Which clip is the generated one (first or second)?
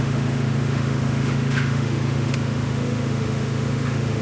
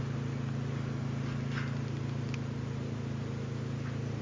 first